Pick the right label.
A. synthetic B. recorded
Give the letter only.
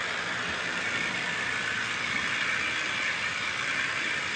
A